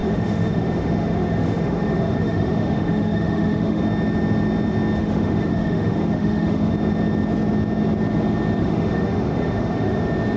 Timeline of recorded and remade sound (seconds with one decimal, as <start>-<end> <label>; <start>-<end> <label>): 0.0-3.8 remade; 3.8-5.0 recorded; 5.0-6.7 remade; 6.7-8.6 recorded; 8.6-10.0 remade; 10.0-10.4 recorded